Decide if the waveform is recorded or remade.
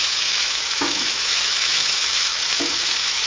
remade